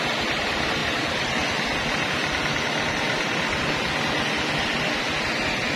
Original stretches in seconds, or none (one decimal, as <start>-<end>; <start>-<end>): 0.0-5.8